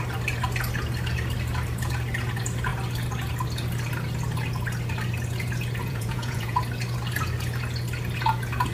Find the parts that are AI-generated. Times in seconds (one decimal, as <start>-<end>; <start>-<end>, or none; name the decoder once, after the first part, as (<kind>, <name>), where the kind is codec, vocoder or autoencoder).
5.8-6.6 (vocoder, Vocos)